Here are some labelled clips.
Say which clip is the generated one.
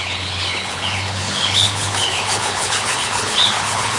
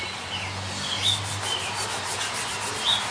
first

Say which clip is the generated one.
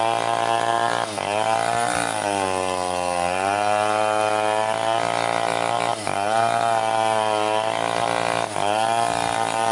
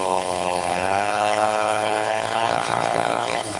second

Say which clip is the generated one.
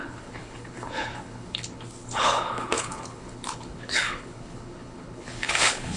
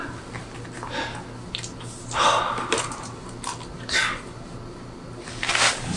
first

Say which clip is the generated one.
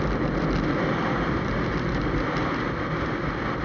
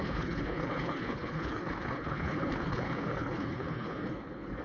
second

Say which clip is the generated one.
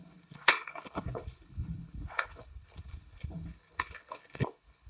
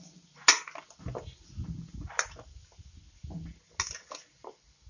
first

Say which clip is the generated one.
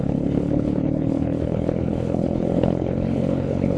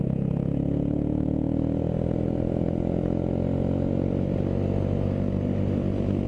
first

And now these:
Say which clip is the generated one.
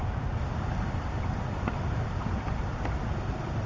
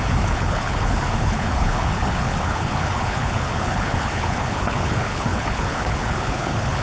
second